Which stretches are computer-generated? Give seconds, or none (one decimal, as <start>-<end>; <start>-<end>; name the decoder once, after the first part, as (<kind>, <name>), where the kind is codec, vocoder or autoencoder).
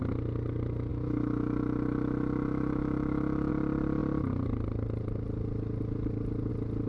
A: 0.9-3.5 (autoencoder, DAC-VAE)